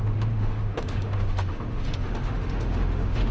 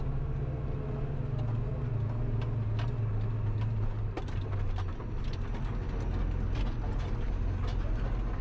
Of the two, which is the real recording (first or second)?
second